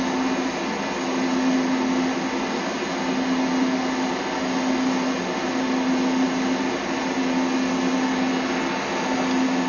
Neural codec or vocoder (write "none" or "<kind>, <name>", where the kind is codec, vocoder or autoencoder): none